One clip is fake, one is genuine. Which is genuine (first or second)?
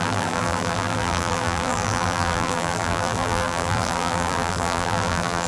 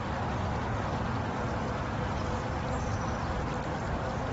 second